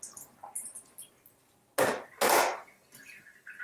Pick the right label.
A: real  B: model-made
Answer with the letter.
A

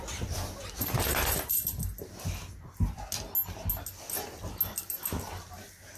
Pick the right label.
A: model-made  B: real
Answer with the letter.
B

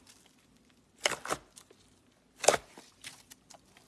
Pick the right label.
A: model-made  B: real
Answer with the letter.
B